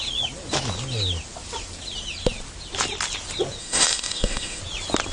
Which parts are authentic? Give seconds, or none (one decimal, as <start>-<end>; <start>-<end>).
0.0-3.6; 4.6-5.1